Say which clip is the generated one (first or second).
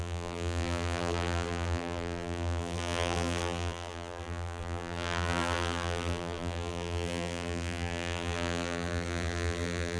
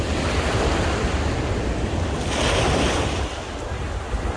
first